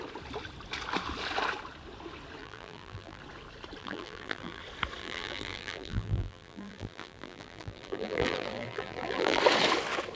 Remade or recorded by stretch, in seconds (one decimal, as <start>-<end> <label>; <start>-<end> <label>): 0.0-2.4 recorded; 2.4-3.2 remade; 3.2-3.8 recorded; 3.8-4.6 remade; 4.6-5.0 recorded; 5.0-9.4 remade; 9.4-10.2 recorded